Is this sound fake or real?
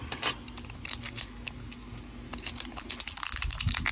real